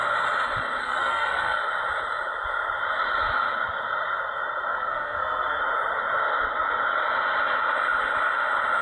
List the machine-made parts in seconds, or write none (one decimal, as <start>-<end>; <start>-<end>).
0.8-1.6; 4.7-5.6